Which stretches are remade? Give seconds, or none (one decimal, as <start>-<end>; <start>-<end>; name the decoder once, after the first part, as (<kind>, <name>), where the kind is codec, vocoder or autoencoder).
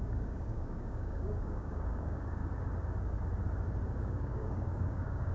0.0-2.4 (codec, DAC); 4.0-5.3